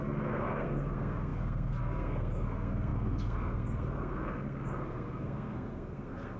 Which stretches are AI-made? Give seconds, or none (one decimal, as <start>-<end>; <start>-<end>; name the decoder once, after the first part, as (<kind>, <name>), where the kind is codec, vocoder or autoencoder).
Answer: 0.0-6.4 (codec, SNAC)